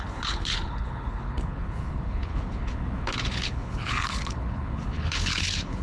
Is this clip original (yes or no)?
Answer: no